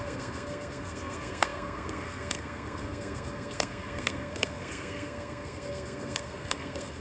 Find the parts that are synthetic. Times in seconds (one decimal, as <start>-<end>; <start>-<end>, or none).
0.0-7.0